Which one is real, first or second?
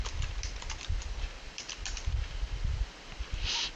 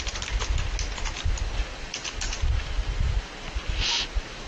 second